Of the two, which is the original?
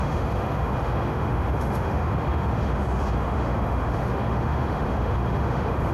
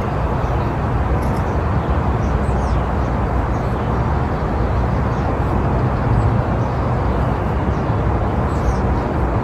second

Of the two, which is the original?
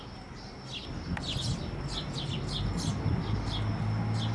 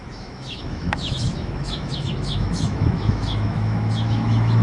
first